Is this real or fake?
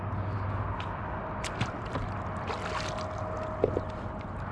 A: real